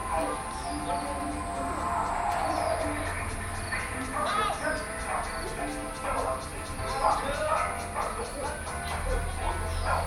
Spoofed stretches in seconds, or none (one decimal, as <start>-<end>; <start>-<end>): 0.0-0.8